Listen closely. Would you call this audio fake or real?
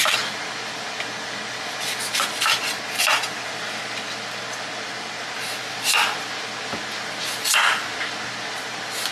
real